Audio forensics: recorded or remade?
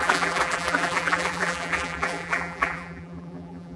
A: remade